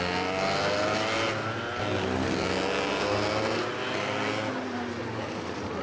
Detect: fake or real real